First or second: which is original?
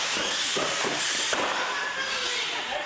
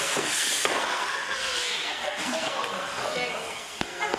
first